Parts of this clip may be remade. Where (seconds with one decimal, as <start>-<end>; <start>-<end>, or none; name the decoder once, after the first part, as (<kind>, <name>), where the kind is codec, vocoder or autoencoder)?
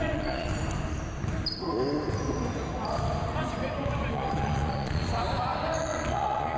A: 0.0-0.5 (vocoder, Vocos); 4.1-5.1; 5.8-6.6